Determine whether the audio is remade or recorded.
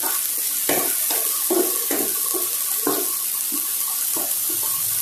recorded